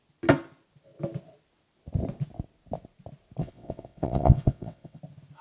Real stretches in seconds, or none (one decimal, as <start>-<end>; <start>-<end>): 0.0-3.4; 5.0-5.4